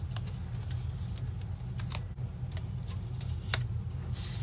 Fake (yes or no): no